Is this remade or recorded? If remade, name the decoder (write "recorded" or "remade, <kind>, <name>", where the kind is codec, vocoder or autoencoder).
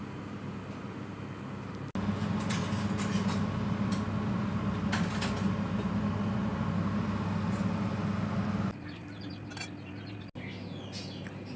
recorded